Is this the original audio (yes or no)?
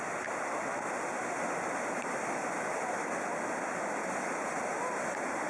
yes